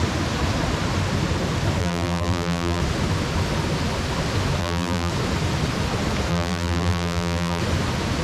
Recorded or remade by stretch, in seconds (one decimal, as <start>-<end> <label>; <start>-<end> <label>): 0.0-1.8 recorded; 1.8-2.8 remade; 2.8-4.6 recorded; 4.6-5.1 remade; 5.1-6.3 recorded; 6.3-7.6 remade; 7.6-8.2 recorded